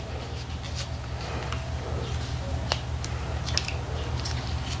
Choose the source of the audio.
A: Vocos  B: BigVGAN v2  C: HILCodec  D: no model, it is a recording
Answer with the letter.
D